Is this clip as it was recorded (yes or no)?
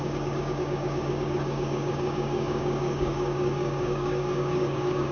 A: no